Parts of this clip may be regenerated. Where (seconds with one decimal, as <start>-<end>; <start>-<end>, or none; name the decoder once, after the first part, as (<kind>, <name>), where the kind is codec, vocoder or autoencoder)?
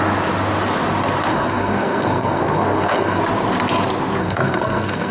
1.3-3.2 (codec, SNAC); 4.2-5.1